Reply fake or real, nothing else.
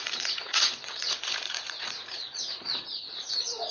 fake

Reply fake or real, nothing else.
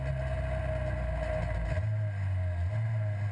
real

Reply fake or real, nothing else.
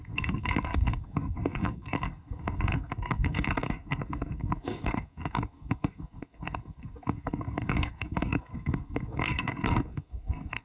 fake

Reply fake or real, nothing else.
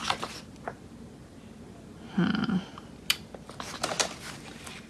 real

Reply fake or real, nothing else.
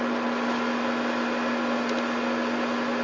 real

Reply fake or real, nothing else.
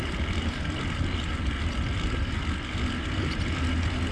real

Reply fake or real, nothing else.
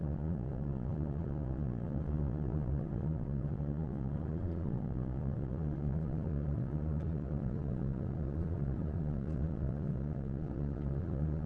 fake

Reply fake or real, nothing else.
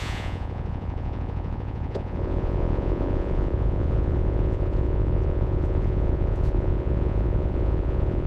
fake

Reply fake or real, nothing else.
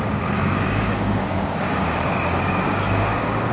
fake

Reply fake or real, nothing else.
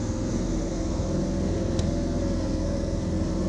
fake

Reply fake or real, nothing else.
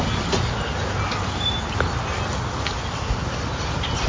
real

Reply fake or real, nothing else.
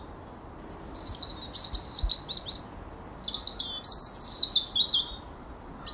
real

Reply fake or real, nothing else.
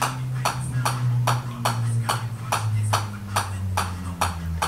real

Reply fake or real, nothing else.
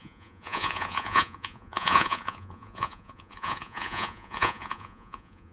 fake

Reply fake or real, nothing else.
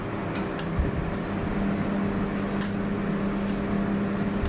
real